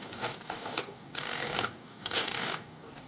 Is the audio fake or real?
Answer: fake